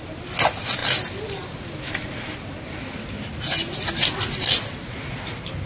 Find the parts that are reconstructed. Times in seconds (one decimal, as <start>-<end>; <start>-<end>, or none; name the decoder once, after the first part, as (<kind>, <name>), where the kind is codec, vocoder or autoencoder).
none